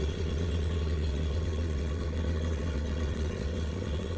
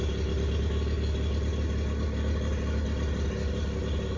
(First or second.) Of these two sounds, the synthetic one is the first